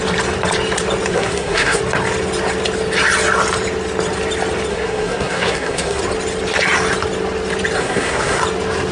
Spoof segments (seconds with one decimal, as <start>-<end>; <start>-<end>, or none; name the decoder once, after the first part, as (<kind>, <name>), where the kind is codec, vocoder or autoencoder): 1.1-1.8 (codec, SNAC); 4.7-6.0; 7.8-8.4